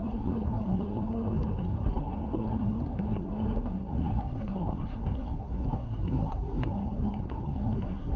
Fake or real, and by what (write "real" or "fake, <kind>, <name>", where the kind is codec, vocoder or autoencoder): fake, codec, SNAC